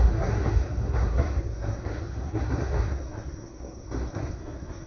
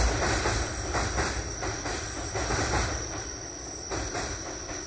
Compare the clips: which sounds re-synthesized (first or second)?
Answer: first